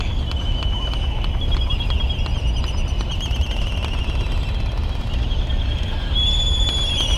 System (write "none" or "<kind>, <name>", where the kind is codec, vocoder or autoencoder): vocoder, BigVGAN v2